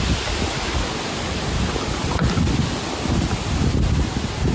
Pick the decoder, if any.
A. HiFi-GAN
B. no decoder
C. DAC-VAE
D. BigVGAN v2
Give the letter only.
B